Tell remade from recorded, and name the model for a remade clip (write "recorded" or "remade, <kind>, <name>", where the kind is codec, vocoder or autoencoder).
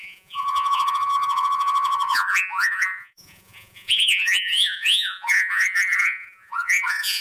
remade, vocoder, Vocos